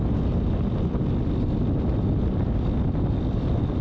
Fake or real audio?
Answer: real